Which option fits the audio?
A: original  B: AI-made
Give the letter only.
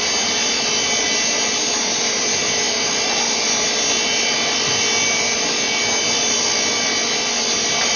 A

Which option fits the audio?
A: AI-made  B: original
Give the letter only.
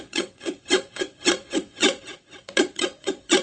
A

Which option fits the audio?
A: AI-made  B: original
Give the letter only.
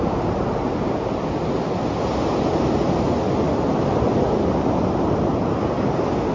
B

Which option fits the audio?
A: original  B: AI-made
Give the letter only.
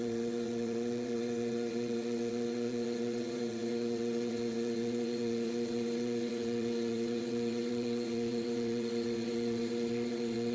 B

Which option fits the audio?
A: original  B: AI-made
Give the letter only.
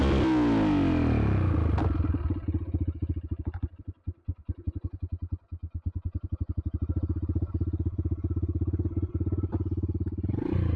A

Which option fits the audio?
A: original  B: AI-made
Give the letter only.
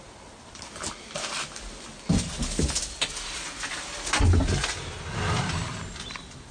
A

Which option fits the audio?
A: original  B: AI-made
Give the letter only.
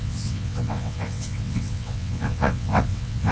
B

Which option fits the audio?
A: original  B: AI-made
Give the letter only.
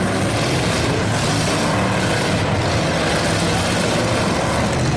A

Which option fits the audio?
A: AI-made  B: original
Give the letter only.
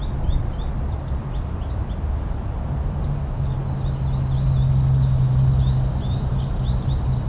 B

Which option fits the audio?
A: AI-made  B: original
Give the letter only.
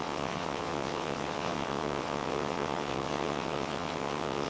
A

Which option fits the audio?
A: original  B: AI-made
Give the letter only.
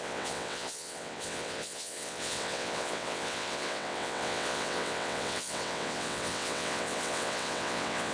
B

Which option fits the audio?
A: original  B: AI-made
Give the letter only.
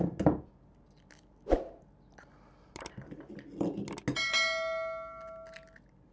A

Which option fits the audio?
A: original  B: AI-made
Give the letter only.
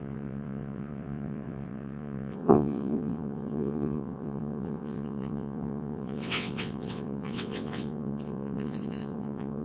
B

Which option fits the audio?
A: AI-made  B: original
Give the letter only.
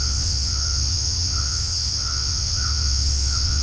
A